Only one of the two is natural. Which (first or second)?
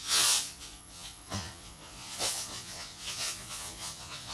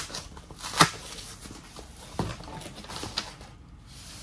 second